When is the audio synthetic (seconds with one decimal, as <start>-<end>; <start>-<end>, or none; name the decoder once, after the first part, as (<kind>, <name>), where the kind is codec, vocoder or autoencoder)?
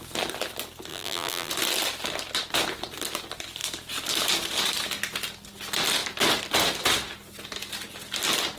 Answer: 0.9-1.5 (vocoder, BigVGAN v2)